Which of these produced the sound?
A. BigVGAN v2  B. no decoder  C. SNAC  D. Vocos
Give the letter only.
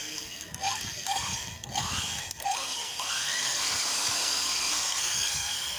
C